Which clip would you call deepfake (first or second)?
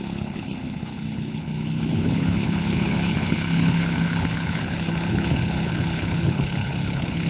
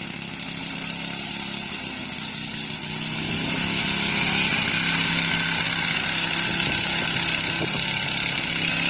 first